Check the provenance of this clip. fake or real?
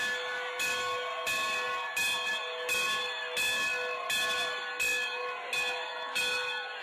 real